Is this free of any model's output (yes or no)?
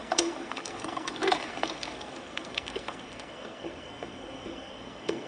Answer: no